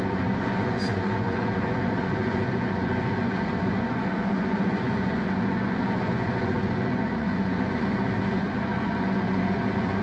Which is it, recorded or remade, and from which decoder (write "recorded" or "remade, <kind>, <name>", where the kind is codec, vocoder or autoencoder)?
remade, vocoder, Vocos